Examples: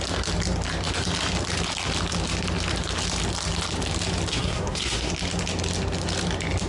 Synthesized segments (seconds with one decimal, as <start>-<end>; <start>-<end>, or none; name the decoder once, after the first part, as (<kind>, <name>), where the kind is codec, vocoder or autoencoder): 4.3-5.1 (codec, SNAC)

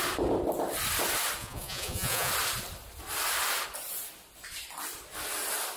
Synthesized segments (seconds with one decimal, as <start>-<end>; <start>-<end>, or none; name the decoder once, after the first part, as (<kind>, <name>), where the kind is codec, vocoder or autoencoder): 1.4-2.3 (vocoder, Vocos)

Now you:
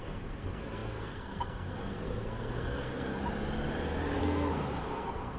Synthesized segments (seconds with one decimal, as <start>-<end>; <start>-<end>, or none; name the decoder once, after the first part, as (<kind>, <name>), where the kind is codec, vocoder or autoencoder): 0.0-3.1 (codec, SNAC); 4.2-5.4